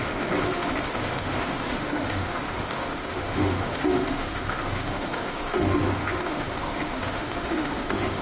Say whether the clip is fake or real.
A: fake